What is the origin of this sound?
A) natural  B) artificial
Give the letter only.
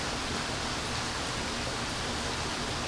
A